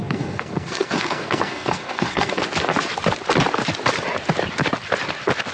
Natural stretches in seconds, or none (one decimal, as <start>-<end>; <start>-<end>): 2.4-5.5